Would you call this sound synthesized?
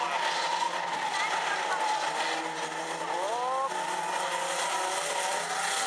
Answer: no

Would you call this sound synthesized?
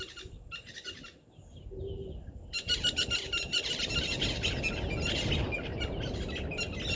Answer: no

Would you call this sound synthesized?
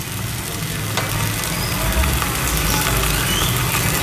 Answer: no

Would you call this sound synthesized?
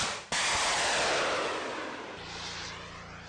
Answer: no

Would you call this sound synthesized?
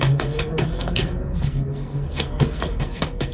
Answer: yes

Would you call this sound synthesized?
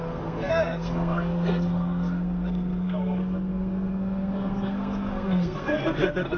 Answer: yes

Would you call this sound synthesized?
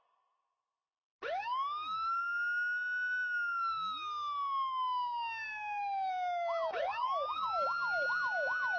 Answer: no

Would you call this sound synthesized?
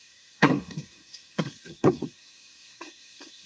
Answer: yes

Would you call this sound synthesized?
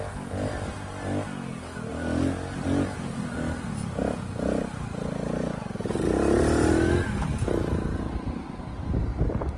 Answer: no